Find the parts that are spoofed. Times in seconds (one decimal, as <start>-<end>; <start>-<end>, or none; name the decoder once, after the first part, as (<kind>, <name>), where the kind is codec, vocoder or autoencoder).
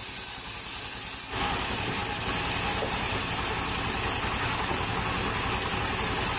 none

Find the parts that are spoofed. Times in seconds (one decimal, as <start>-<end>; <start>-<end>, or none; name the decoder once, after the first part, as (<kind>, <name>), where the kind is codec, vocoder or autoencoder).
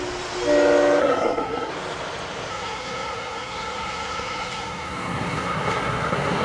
1.0-1.7 (codec, SNAC); 2.5-6.4